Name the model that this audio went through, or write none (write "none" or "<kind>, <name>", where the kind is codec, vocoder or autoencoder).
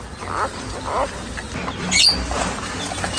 none